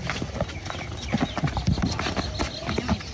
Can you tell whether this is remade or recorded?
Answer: recorded